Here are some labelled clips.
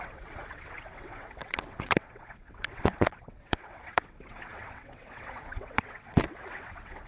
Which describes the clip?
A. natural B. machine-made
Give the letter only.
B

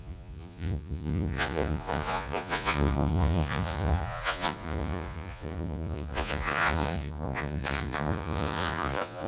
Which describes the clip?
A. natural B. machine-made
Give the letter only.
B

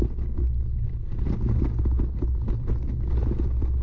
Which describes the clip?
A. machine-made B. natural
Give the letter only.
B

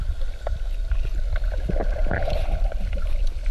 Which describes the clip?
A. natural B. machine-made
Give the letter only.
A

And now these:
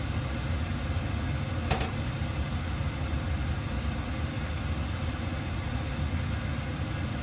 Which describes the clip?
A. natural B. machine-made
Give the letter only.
A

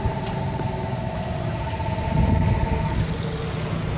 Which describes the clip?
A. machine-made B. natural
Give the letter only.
B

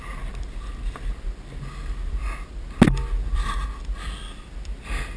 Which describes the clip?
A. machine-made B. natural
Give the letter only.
B